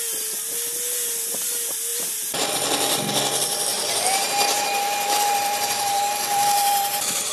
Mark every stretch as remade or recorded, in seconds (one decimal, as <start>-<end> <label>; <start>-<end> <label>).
0.0-1.9 recorded; 1.9-2.5 remade; 2.5-3.7 recorded; 3.7-7.3 remade